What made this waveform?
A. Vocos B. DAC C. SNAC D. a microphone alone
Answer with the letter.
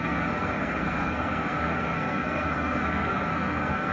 C